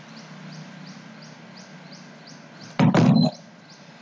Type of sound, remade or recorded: recorded